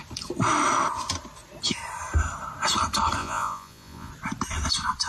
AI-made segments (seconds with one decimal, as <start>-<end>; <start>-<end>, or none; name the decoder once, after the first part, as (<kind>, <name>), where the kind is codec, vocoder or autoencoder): 3.2-4.1 (vocoder, Vocos)